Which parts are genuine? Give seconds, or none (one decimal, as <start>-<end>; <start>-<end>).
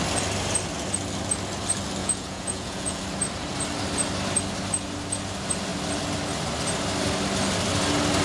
0.0-2.0; 3.0-8.2